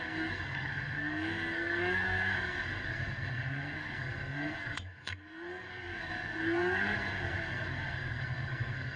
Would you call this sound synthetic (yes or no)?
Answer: yes